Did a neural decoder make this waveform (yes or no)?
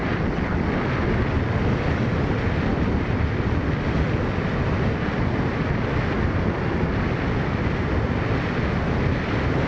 no